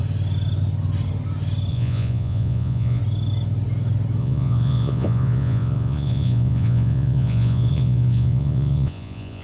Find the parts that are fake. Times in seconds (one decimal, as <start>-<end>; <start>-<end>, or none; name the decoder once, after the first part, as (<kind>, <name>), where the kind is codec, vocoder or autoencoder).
1.7-3.0 (vocoder, Vocos); 4.2-9.4